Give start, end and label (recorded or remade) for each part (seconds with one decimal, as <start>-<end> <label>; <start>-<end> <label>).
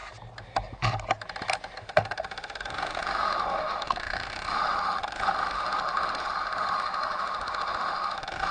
0.0-1.8 recorded; 1.8-8.5 remade